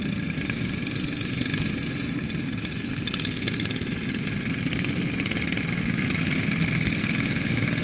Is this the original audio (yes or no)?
yes